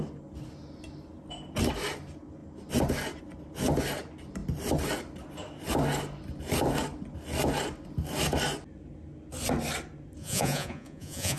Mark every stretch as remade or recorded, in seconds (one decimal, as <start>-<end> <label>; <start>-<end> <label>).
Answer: 0.0-10.2 recorded; 10.2-11.4 remade